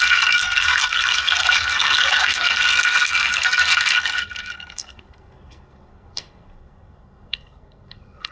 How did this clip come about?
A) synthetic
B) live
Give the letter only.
A